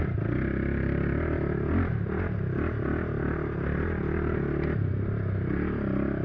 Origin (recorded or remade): recorded